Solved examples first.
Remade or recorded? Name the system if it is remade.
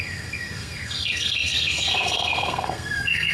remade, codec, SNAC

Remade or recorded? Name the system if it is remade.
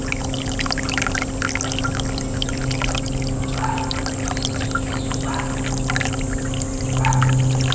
recorded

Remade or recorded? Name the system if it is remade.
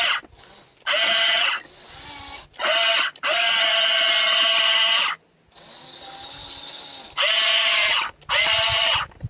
recorded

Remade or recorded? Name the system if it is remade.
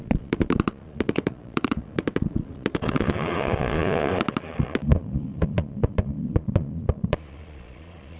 remade, vocoder, Vocos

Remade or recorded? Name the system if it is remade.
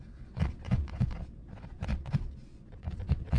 remade, vocoder, Vocos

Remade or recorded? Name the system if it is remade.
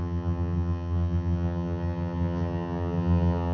remade, vocoder, HiFi-GAN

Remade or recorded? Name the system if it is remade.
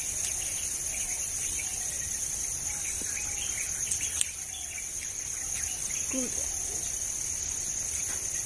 recorded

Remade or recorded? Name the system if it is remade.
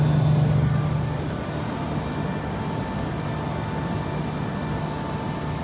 recorded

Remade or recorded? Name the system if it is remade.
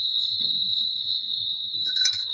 remade, codec, SNAC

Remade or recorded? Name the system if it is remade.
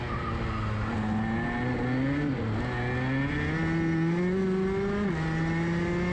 recorded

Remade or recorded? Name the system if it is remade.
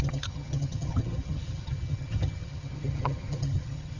remade, vocoder, HiFi-GAN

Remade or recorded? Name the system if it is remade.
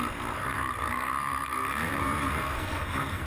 remade, codec, SNAC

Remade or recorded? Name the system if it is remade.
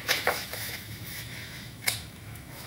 remade, autoencoder, DAC-VAE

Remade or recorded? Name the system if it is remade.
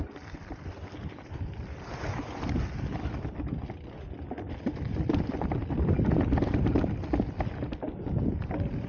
recorded